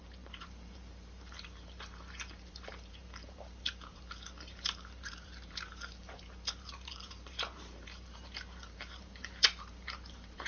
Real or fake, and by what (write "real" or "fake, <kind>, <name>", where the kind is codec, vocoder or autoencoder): fake, vocoder, BigVGAN v2